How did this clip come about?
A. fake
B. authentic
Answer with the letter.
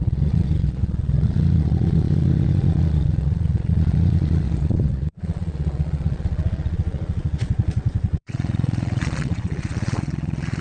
A